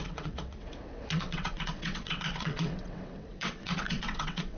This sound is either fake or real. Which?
fake